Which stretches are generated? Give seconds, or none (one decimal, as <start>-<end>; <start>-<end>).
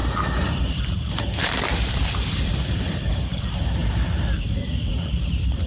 0.0-3.8; 4.4-5.7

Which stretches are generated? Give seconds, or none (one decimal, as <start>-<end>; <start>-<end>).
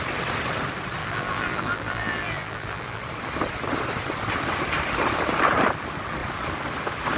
1.0-3.0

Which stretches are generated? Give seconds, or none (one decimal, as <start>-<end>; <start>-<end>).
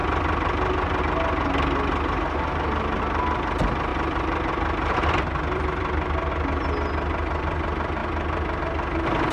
3.9-6.3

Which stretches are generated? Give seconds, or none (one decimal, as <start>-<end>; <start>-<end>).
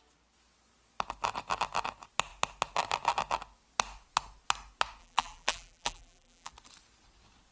5.0-6.5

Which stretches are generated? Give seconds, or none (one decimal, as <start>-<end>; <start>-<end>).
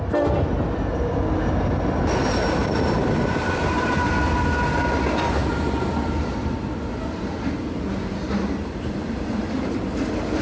2.6-4.1